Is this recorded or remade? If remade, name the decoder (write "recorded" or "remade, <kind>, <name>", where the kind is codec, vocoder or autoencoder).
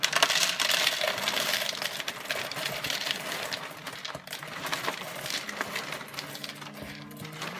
recorded